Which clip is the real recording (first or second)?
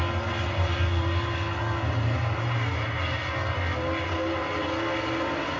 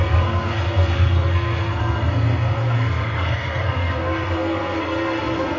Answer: first